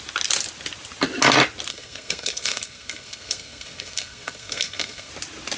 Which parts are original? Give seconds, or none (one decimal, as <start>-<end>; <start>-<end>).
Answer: 0.0-1.7; 5.1-5.6